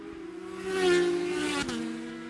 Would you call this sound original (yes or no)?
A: yes